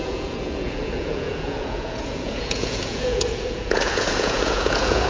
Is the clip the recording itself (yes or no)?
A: no